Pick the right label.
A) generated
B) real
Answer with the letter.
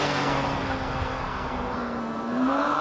A